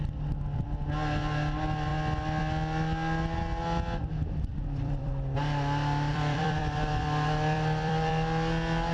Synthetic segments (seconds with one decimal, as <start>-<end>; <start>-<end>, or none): 4.5-5.1; 6.1-8.1

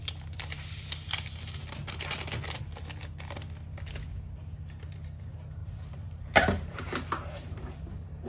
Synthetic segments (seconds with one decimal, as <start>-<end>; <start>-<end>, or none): 5.6-8.3

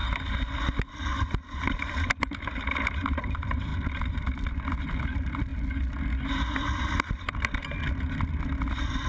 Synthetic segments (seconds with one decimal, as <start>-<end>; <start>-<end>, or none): 1.8-3.7; 4.7-5.5; 8.4-9.1

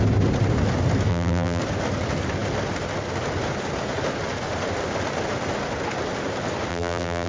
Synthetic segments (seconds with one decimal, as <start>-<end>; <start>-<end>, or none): 1.1-1.6; 6.7-7.3

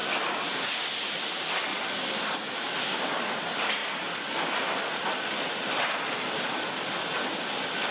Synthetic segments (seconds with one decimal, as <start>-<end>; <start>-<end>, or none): 0.0-0.9; 1.7-2.9

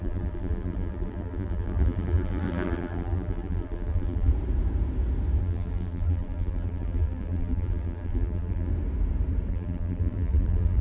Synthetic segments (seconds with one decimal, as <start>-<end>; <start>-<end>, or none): 0.0-4.3; 5.4-8.7; 9.5-10.8

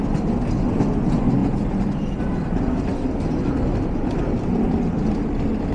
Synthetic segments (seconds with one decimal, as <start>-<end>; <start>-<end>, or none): none

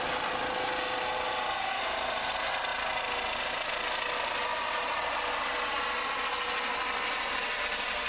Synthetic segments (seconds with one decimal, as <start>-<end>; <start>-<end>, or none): none